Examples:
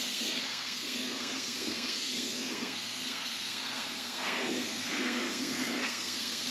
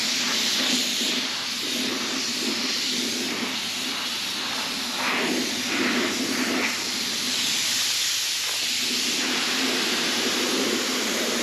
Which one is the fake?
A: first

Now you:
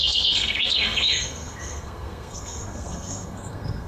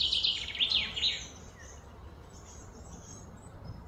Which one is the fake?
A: first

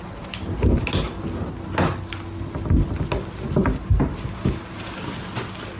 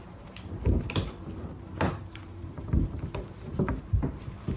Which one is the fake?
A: second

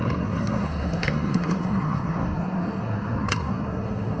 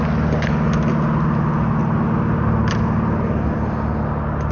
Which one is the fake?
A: first